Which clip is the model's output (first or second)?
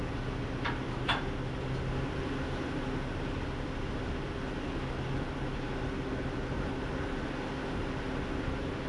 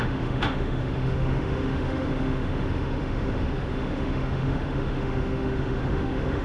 second